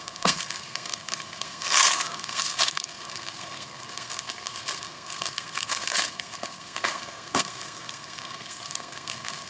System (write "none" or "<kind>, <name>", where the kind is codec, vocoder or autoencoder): codec, SNAC